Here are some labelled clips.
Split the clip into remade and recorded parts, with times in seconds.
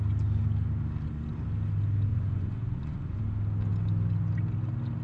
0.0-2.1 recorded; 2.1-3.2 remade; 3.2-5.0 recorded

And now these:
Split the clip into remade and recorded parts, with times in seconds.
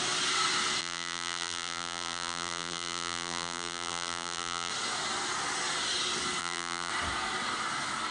0.0-0.8 recorded; 0.8-4.7 remade; 4.7-6.4 recorded; 6.4-6.9 remade; 6.9-8.1 recorded